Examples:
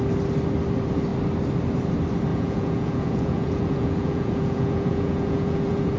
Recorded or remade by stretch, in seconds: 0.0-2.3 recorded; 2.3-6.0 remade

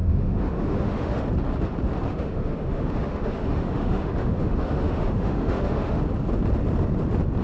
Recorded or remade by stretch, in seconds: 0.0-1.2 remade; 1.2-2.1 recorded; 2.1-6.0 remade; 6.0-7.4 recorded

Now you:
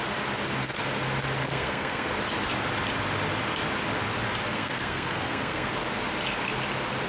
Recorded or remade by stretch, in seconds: 0.0-1.4 recorded; 1.4-2.1 remade; 2.1-4.5 recorded; 4.5-5.7 remade; 5.7-7.1 recorded